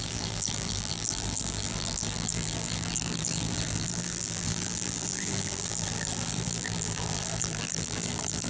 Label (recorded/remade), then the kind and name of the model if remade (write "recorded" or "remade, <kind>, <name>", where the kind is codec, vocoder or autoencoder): remade, vocoder, BigVGAN v2